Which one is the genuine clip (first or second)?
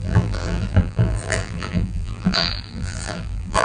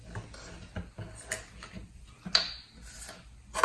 second